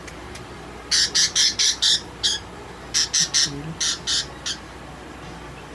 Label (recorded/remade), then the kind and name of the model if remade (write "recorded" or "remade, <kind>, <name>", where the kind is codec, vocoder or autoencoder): recorded